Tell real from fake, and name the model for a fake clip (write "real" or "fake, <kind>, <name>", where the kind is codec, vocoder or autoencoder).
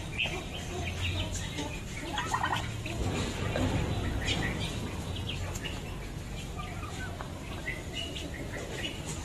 real